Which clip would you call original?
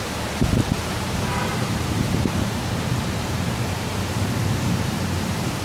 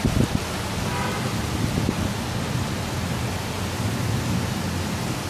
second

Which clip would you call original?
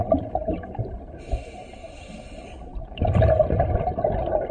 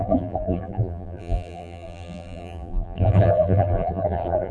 first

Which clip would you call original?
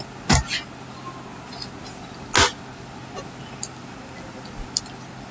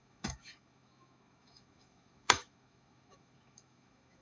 first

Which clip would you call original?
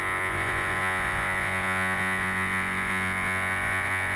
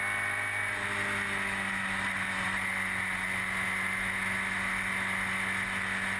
second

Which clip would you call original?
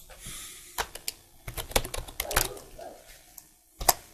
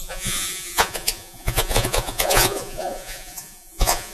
first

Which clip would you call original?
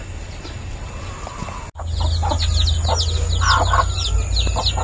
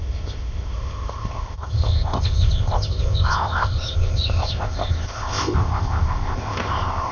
first